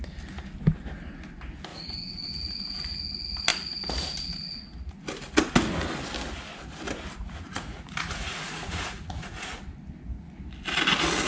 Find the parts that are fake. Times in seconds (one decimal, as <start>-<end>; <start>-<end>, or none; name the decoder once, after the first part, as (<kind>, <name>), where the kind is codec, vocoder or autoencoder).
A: 1.7-2.3 (vocoder, Vocos); 7.2-9.6